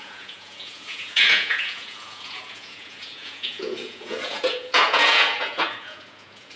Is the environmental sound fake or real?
fake